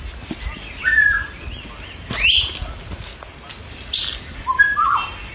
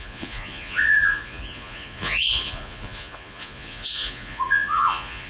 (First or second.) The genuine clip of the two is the first